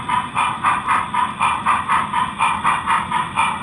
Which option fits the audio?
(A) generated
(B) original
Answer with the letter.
B